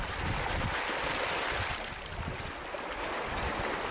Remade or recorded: recorded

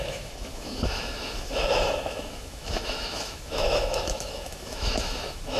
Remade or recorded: remade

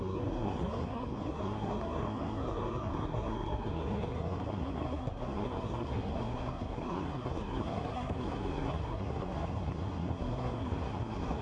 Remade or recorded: remade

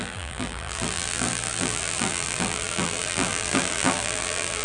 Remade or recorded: remade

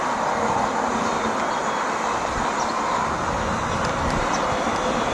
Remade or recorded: recorded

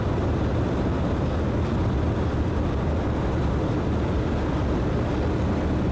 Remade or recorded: recorded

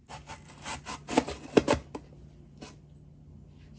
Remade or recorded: recorded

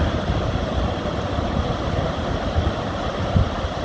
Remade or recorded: recorded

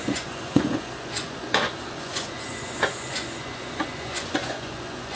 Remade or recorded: remade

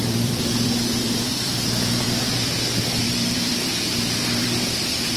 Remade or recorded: remade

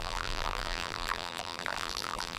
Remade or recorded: remade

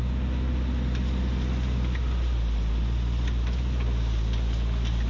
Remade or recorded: recorded